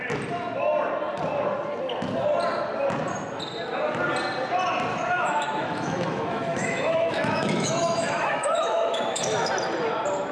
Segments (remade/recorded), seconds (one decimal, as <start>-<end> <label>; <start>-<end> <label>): 0.0-4.9 recorded; 4.9-9.5 remade; 9.5-10.3 recorded